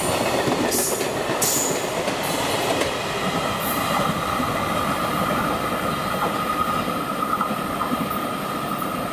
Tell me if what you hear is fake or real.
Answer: real